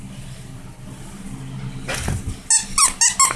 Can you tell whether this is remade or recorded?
recorded